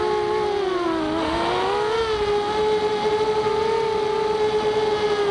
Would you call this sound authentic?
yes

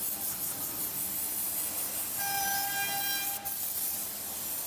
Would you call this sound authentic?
yes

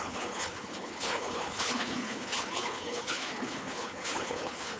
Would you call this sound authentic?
no